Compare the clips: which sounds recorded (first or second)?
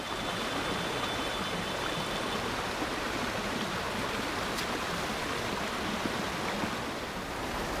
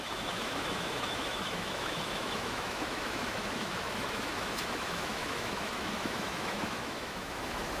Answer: first